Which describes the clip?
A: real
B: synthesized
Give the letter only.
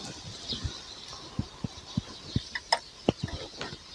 A